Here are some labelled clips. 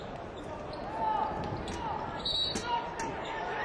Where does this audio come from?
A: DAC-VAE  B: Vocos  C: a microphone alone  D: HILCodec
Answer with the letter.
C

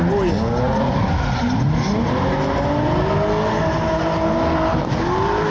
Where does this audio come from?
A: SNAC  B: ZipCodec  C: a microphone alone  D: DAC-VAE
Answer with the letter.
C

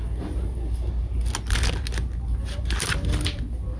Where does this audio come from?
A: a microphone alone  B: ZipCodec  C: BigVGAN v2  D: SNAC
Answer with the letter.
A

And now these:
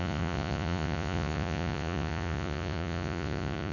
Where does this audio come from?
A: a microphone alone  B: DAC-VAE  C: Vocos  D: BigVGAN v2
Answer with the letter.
C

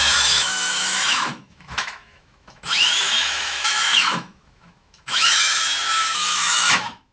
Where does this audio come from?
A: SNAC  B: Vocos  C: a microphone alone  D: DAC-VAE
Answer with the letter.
D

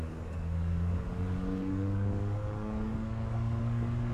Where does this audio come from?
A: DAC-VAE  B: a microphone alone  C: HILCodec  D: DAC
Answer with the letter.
D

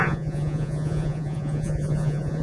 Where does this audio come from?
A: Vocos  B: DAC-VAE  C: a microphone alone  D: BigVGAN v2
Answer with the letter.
A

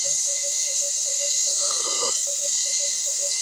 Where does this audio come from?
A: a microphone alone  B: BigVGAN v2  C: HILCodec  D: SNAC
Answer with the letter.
D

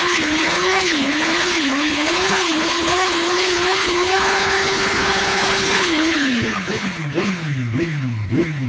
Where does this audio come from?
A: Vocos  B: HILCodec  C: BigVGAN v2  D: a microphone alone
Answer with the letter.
B